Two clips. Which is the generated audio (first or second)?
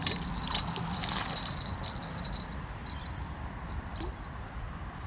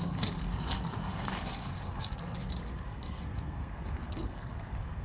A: second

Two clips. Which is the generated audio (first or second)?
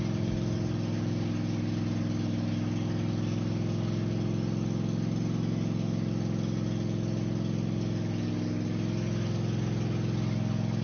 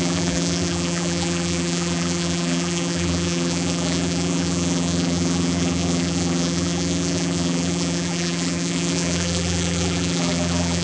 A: second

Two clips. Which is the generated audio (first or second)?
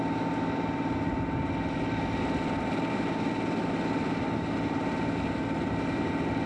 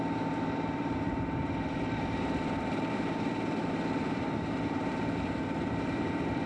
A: second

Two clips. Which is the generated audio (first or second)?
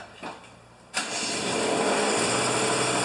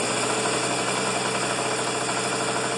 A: first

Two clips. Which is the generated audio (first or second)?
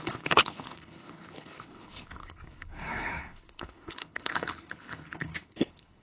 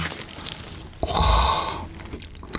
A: first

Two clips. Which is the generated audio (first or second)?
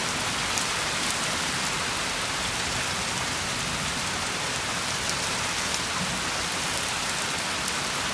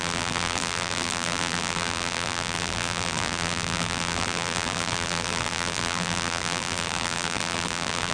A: second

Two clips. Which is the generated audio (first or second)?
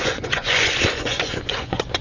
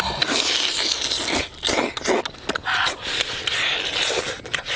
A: first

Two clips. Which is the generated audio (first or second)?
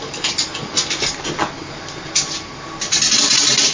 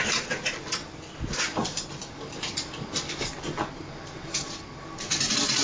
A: second